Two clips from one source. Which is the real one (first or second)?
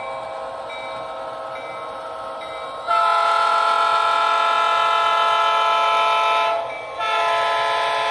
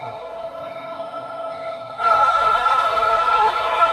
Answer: first